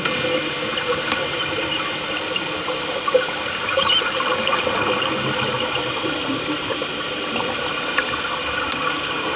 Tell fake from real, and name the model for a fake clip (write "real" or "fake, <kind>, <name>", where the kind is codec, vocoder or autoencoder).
real